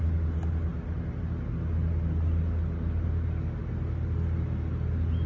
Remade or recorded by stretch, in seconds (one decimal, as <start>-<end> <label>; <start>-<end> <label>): 0.0-5.3 recorded